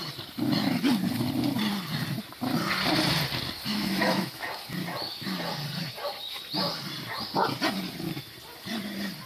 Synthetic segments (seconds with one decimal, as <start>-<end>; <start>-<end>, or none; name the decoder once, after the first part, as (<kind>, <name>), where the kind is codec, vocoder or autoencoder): 3.7-4.5 (autoencoder, DAC-VAE)